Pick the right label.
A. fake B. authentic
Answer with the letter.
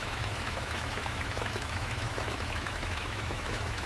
A